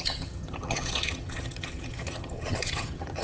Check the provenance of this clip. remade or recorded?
remade